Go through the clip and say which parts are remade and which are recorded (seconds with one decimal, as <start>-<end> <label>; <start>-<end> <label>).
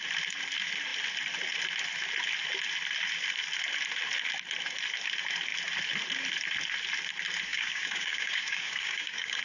0.0-7.5 recorded; 7.5-9.4 remade